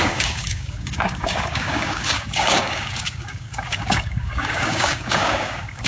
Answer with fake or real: fake